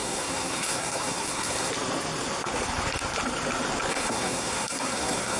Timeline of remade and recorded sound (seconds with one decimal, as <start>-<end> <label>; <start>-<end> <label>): 0.0-1.7 remade; 1.7-3.9 recorded; 3.9-5.4 remade